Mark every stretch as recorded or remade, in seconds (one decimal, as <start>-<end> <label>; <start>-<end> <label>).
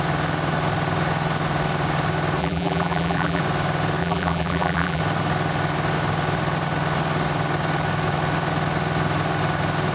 0.0-2.4 recorded; 2.4-3.4 remade; 3.4-4.0 recorded; 4.0-5.0 remade; 5.0-9.9 recorded